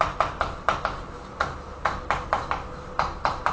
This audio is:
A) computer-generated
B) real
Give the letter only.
B